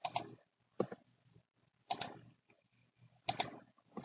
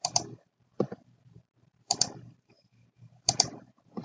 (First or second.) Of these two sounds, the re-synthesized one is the second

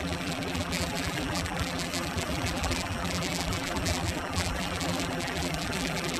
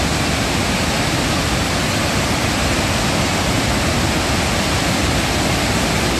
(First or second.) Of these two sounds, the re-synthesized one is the first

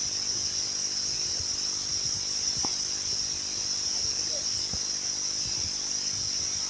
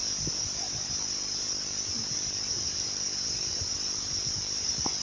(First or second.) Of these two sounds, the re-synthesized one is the second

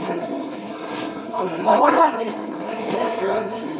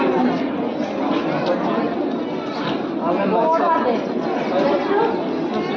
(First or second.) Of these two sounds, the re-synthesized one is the first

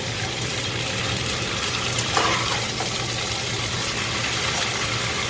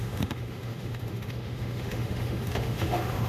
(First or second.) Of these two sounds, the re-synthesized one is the second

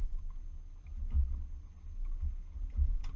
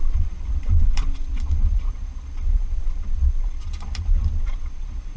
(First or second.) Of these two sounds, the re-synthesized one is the second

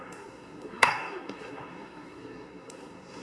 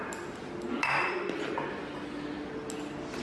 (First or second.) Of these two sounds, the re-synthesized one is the first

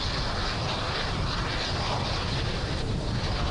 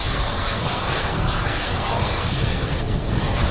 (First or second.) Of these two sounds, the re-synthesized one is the second